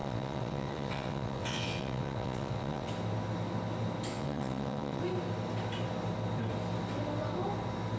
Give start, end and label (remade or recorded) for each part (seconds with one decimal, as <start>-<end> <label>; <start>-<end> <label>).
0.0-2.9 remade; 2.9-4.1 recorded; 4.1-5.0 remade; 5.0-8.0 recorded